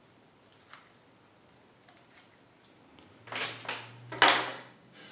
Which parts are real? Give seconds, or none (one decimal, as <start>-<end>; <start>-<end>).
0.0-4.5